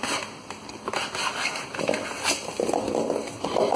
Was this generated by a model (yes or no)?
no